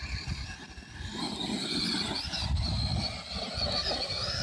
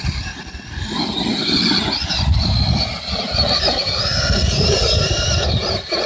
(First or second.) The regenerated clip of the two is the second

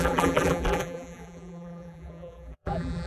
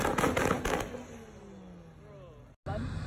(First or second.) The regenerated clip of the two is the first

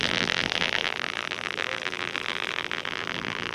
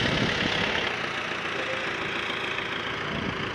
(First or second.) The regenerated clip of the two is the first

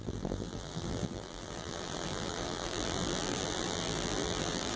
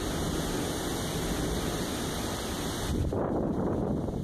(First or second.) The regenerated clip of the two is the first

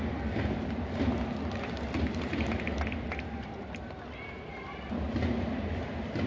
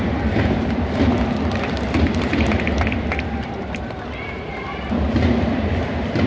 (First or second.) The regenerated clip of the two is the second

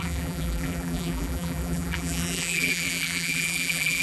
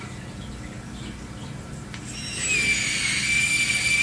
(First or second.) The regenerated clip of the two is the first